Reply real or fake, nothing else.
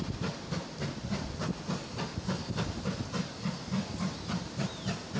real